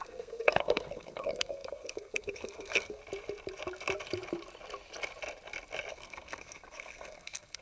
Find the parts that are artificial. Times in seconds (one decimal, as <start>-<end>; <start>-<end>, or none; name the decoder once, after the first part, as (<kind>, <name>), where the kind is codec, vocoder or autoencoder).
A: 0.0-3.0 (codec, SNAC); 5.9-7.6